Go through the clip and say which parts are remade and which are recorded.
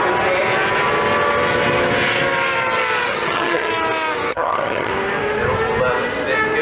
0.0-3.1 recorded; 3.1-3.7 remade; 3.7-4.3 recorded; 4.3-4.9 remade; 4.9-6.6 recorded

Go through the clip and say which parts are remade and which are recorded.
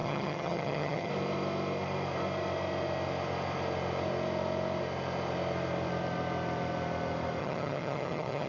0.0-1.1 remade; 1.1-7.4 recorded; 7.4-8.5 remade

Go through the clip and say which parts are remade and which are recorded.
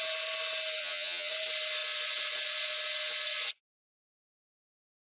0.0-0.8 recorded; 0.8-1.3 remade; 1.3-5.2 recorded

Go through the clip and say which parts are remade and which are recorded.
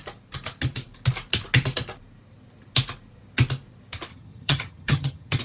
0.0-4.1 recorded; 4.1-5.4 remade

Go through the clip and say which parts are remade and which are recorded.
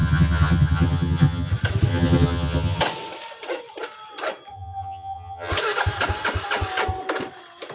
0.0-1.5 remade; 1.5-1.9 recorded; 1.9-2.8 remade; 2.8-4.5 recorded; 4.5-5.5 remade; 5.5-7.7 recorded